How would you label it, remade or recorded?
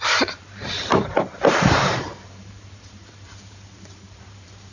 remade